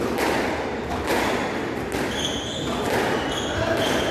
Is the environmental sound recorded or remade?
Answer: recorded